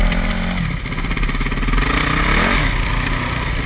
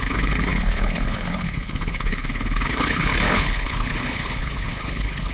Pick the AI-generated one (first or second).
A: second